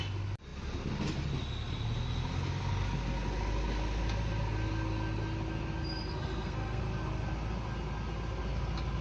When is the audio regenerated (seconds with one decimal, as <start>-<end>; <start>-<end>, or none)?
6.1-6.8